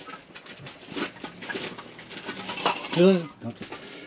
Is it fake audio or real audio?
real